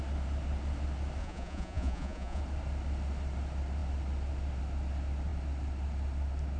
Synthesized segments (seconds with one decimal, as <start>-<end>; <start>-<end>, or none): 1.2-2.4